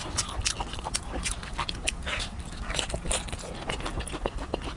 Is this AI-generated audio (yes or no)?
no